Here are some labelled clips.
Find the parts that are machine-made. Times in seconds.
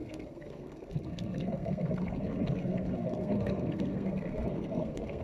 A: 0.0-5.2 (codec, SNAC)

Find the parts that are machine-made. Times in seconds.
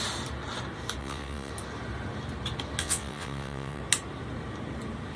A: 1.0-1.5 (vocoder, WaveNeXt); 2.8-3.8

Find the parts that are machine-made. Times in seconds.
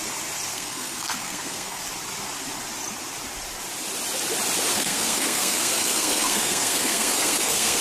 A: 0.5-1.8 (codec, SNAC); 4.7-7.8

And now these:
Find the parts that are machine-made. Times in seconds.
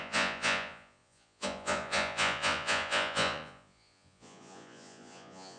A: 0.0-5.6 (vocoder, Vocos)